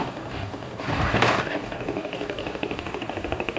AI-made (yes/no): yes